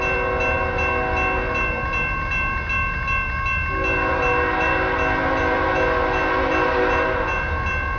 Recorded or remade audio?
recorded